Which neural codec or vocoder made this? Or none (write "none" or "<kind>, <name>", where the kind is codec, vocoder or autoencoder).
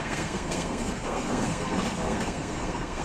codec, SNAC